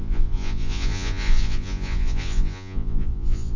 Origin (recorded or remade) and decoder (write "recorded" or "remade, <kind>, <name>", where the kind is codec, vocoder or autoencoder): remade, vocoder, Vocos